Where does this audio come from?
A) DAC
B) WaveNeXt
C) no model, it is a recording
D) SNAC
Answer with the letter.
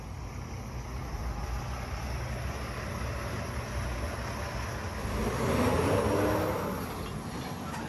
C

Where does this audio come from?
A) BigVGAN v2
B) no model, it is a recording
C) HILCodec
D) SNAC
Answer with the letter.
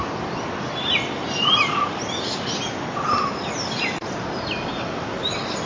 B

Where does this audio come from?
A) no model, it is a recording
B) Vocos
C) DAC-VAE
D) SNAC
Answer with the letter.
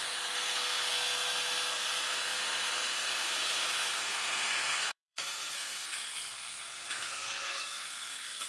D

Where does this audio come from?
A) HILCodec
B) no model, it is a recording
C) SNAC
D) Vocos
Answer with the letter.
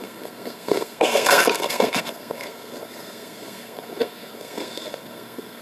C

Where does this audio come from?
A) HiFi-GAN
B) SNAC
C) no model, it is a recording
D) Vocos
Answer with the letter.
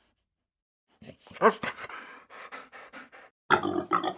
C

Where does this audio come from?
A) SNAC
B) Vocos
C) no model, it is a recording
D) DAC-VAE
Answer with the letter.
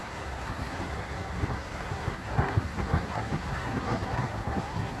A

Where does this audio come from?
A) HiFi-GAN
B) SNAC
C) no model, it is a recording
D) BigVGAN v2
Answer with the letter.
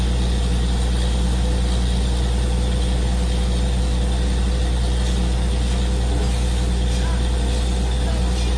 C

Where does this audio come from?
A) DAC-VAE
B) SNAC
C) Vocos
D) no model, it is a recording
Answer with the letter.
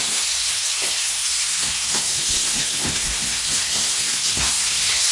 B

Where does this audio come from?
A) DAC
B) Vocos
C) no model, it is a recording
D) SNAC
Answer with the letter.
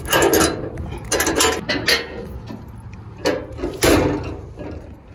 C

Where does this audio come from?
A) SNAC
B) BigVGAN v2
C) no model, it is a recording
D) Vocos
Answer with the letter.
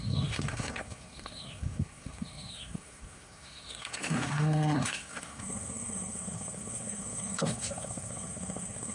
A